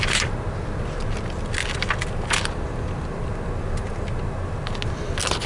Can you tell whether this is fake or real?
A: real